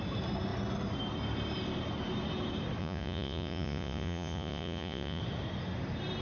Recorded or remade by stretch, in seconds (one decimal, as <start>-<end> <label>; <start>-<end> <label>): 0.0-2.8 recorded; 2.8-5.2 remade; 5.2-6.2 recorded